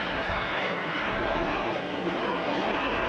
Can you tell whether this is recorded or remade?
remade